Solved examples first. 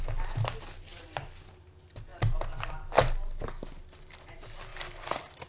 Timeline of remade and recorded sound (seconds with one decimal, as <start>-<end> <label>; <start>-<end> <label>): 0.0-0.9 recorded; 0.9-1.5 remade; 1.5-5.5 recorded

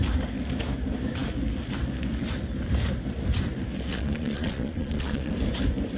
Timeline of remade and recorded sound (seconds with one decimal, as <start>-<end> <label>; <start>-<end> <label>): 0.0-3.9 recorded; 3.9-5.3 remade; 5.3-6.0 recorded

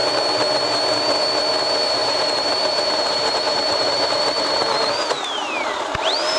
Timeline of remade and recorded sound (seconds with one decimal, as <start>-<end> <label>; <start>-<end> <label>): 0.0-1.1 recorded; 1.1-6.4 remade

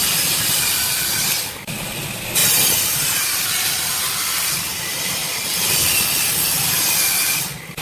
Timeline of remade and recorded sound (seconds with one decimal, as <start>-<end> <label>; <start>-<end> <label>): 0.0-7.8 recorded